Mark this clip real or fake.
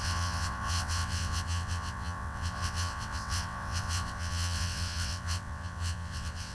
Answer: fake